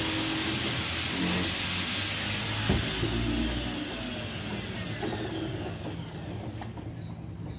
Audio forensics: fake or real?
real